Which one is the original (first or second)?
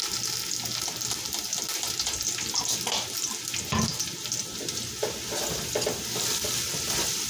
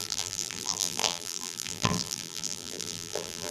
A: first